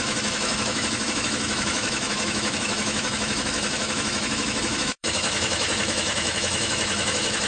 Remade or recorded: remade